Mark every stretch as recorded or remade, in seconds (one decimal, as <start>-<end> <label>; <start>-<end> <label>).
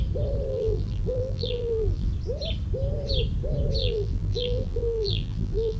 0.0-0.5 recorded; 0.5-2.1 remade; 2.1-3.8 recorded; 3.8-5.8 remade